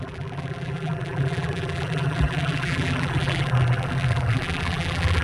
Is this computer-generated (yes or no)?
yes